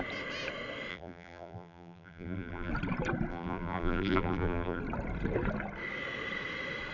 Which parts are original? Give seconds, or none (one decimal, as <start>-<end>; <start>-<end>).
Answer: 0.0-0.9; 2.7-3.3; 4.8-6.9